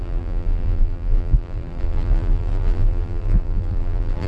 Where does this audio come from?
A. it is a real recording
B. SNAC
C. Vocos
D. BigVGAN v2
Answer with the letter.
D